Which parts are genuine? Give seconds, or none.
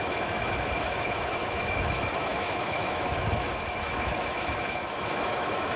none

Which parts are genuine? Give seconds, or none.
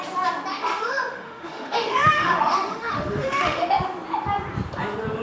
0.0-0.5; 3.6-5.2